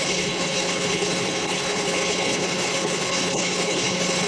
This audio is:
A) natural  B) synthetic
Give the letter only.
B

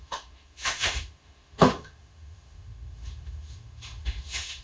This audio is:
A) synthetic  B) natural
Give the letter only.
A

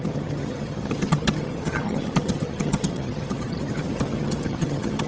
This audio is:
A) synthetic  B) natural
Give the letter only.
A